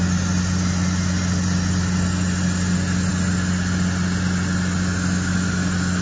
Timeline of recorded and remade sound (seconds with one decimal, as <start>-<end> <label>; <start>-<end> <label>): 0.0-6.0 recorded